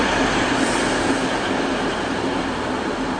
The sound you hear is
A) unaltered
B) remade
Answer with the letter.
A